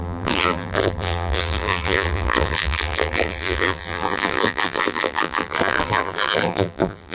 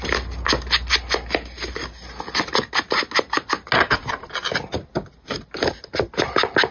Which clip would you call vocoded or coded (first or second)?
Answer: first